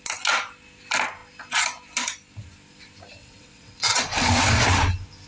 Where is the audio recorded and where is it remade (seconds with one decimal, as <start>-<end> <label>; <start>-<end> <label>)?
0.0-3.2 recorded; 3.2-4.0 remade; 4.0-5.3 recorded